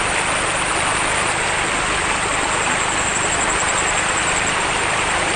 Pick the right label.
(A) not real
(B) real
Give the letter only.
B